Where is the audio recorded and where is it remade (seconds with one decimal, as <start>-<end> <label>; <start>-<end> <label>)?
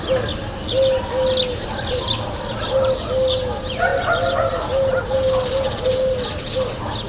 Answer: 0.0-7.1 recorded